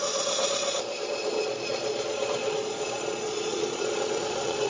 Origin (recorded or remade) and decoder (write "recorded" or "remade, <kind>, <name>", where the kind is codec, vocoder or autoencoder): remade, vocoder, Vocos